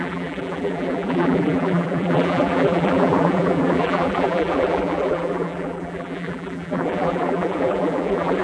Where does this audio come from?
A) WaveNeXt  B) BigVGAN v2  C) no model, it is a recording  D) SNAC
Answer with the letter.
B